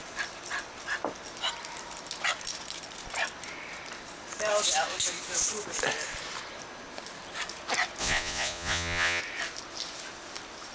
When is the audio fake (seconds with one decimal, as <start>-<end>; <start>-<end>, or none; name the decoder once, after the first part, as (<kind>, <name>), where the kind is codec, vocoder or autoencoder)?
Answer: 8.0-9.2 (vocoder, Vocos)